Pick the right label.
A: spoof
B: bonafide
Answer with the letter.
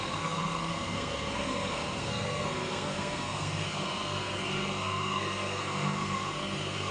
A